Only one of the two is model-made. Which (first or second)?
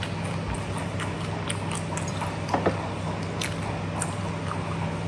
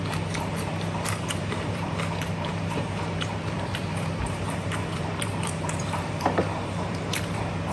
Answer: second